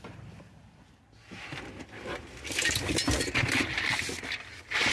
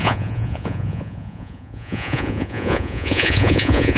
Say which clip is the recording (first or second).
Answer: first